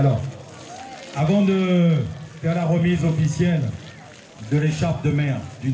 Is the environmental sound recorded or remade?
recorded